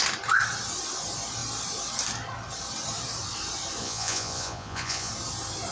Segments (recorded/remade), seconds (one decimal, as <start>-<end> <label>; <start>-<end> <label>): 0.0-3.8 recorded; 3.8-5.1 remade; 5.1-5.7 recorded